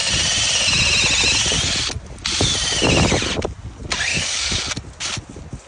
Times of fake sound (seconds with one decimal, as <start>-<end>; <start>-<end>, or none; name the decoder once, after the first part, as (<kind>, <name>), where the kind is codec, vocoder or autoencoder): 4.1-4.6 (codec, DAC)